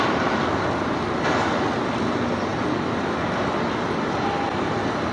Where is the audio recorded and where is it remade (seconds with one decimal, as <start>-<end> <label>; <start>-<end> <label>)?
0.0-5.1 recorded